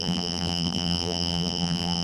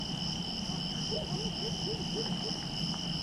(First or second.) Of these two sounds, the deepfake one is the first